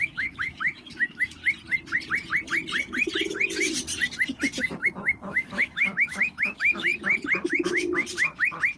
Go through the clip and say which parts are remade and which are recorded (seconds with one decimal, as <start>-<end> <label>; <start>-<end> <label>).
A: 0.0-1.4 remade; 1.4-4.6 recorded; 4.6-6.9 remade; 6.9-8.8 recorded